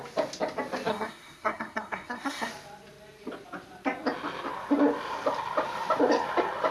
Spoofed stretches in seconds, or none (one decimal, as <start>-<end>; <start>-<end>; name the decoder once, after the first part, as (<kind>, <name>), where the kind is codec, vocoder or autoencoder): 0.9-2.5 (codec, SNAC)